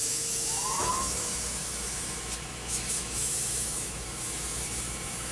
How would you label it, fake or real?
fake